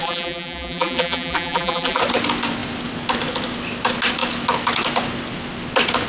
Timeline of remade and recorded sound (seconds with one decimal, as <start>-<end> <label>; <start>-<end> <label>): 0.0-2.0 remade; 2.0-6.1 recorded